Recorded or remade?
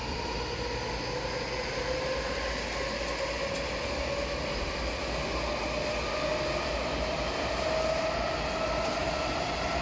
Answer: recorded